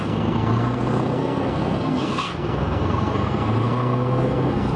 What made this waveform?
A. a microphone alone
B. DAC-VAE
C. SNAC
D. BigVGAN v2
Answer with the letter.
C